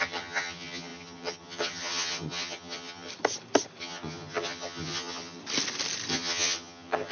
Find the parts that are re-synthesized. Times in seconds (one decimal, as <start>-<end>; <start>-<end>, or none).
0.0-3.1; 3.8-5.4; 6.1-7.1